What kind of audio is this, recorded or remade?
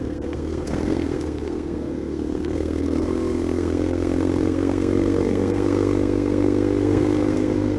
remade